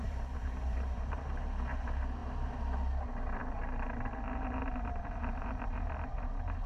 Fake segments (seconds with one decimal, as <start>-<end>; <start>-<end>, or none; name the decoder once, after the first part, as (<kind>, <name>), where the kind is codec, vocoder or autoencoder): 0.0-6.7 (vocoder, BigVGAN v2)